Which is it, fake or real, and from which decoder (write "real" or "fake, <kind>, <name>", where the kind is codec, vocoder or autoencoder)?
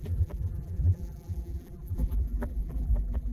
fake, vocoder, BigVGAN v2